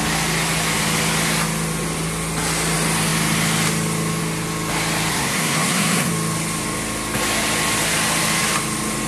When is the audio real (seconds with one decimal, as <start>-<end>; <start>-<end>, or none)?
0.0-5.1; 6.1-9.1